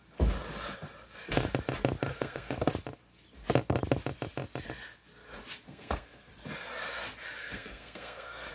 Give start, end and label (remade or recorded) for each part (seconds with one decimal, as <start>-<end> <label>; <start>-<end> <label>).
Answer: 0.0-2.1 recorded; 2.1-2.7 remade; 2.7-5.7 recorded; 5.7-6.3 remade; 6.3-7.4 recorded; 7.4-8.5 remade